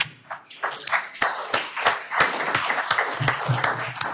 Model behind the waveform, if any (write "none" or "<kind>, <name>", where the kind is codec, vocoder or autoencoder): none